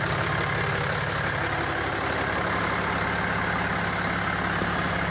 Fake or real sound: real